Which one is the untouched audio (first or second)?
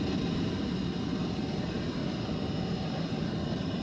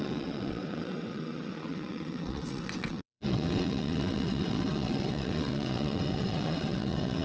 first